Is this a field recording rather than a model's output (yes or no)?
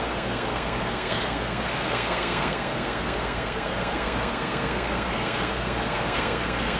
no